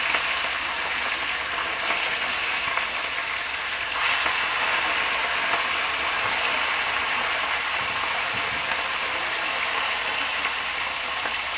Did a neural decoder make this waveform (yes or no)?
yes